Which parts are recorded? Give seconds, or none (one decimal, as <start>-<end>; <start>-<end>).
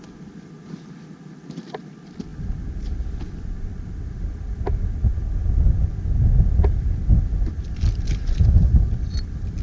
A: 0.0-9.6